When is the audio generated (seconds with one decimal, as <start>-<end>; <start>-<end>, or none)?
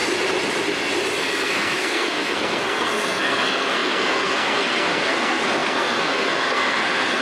1.2-7.2